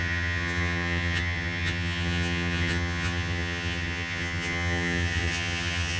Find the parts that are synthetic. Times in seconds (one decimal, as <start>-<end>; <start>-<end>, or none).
0.0-6.0